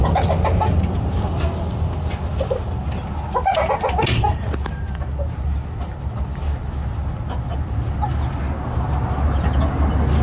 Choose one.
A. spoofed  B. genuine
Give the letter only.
B